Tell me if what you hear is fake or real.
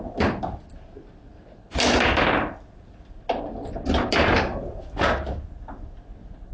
real